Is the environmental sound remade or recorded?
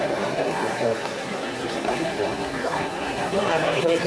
remade